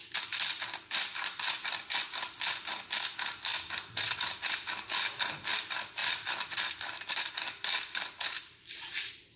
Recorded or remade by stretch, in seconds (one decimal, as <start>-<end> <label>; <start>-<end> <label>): 0.0-3.5 recorded; 3.5-4.7 remade; 4.7-6.0 recorded; 6.0-7.3 remade; 7.3-9.4 recorded